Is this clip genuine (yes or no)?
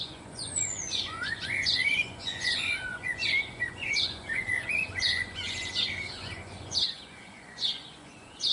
no